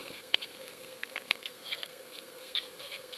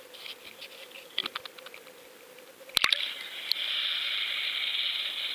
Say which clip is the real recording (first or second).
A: second